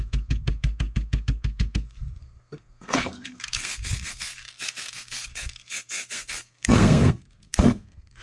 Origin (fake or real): fake